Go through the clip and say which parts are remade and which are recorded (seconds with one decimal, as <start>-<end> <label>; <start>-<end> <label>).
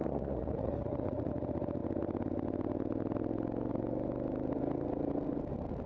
0.0-1.3 remade; 1.3-5.9 recorded